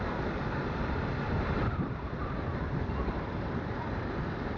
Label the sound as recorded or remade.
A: remade